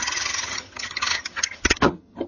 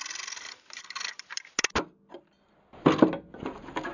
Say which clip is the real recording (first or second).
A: second